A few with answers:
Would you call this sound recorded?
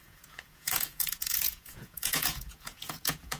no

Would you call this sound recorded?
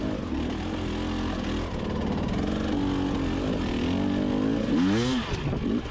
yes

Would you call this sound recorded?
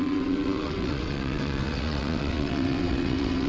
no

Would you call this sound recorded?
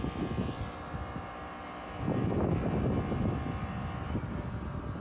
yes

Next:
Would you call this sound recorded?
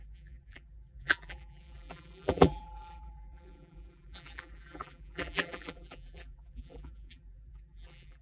no